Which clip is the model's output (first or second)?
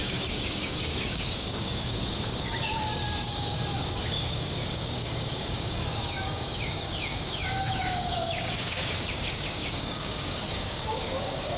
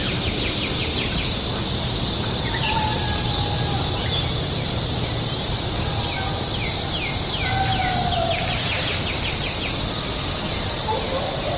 first